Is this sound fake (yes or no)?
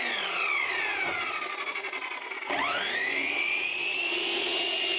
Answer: yes